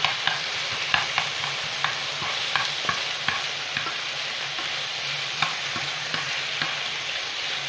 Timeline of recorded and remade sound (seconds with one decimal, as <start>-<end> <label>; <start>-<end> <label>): 0.0-2.0 remade; 2.0-5.0 recorded; 5.0-6.1 remade; 6.1-7.7 recorded